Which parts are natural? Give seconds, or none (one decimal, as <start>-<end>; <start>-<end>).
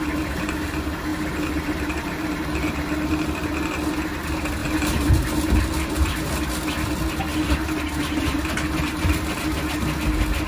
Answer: 0.0-1.1; 2.3-4.6; 5.1-10.5